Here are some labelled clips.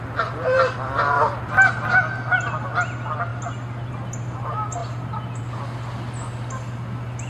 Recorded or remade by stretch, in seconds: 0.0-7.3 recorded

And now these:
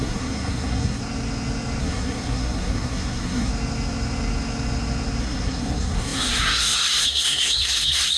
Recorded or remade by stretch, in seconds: 0.0-1.0 remade; 1.0-1.8 recorded; 1.8-3.5 remade; 3.5-5.2 recorded; 5.2-8.2 remade

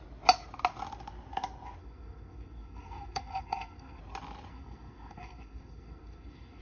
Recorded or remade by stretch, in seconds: 0.0-1.8 recorded; 1.8-4.0 remade; 4.0-4.5 recorded; 4.5-6.6 remade

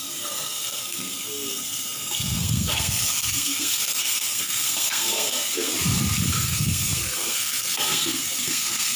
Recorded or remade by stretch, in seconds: 0.0-5.7 remade; 5.7-6.3 recorded; 6.3-9.0 remade